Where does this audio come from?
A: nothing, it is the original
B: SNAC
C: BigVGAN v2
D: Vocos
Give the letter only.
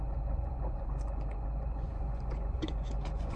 D